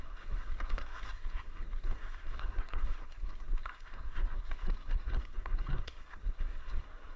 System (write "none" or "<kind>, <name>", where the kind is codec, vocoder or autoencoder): codec, SNAC